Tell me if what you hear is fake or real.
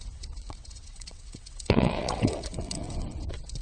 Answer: fake